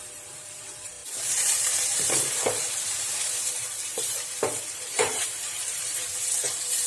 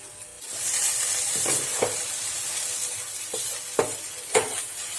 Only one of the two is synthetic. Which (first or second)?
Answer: first